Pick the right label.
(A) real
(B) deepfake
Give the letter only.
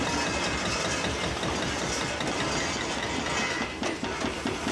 A